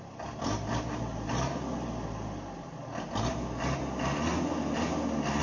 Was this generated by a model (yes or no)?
no